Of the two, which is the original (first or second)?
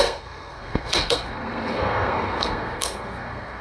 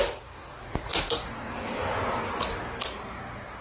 second